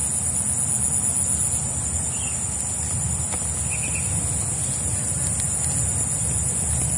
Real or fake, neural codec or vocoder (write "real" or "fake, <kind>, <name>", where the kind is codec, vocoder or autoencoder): real